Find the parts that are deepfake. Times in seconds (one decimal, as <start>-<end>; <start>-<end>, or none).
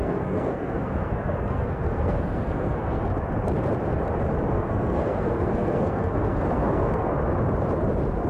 0.0-3.0; 4.5-7.1